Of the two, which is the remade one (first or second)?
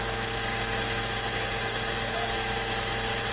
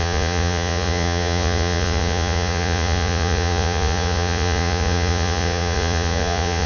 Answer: second